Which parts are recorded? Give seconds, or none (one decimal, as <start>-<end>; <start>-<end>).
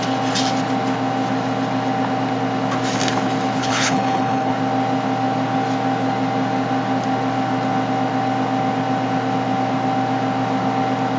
0.0-3.6; 4.5-11.2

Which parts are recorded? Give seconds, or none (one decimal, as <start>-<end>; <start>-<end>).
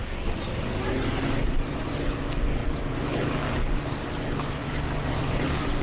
0.0-5.8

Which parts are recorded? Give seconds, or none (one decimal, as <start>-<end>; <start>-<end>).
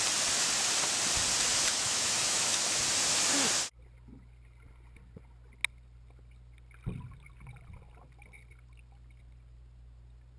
0.0-1.7; 2.8-10.4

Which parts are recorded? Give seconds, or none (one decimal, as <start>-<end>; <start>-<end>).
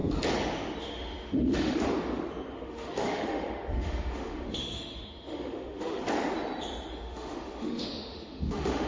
0.0-0.8; 1.9-2.5; 6.0-6.9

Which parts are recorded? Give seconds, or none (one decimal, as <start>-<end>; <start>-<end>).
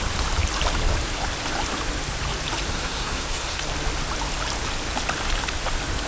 0.0-2.7; 3.6-6.1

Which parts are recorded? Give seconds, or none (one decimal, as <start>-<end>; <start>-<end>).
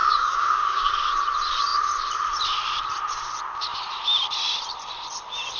0.9-5.6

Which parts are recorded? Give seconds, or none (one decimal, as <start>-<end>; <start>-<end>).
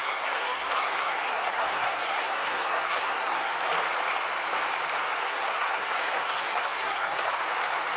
3.5-5.2; 7.4-8.0